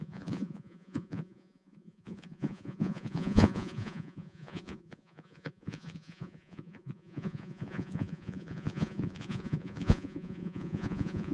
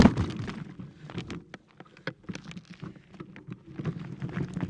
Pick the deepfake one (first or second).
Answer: first